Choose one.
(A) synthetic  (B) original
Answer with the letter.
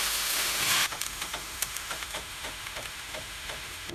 A